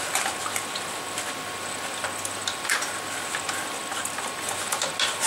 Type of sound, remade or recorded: recorded